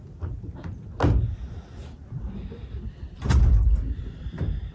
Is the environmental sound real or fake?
real